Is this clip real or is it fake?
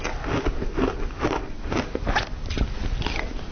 real